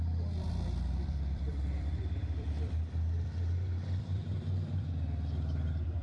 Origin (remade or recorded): remade